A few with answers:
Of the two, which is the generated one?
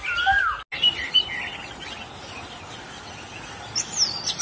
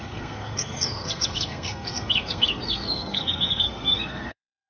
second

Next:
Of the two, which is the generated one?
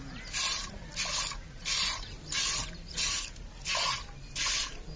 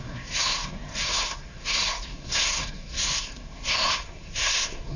second